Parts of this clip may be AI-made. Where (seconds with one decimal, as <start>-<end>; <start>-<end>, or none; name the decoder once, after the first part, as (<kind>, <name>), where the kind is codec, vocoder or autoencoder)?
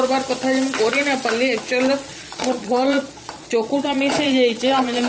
2.1-5.1 (vocoder, Vocos)